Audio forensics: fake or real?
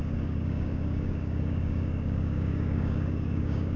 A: fake